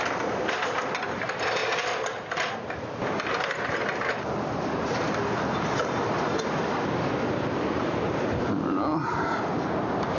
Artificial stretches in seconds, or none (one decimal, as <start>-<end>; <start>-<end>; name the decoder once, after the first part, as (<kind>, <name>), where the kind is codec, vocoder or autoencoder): 3.3-8.5 (vocoder, BigVGAN v2)